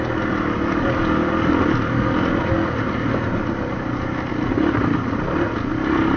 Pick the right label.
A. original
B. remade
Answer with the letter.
A